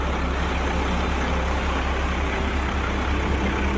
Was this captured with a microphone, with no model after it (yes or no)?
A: yes